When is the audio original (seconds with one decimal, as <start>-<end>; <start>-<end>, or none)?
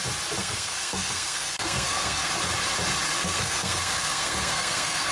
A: 0.0-0.4; 2.3-3.2